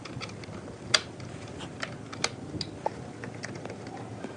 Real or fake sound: real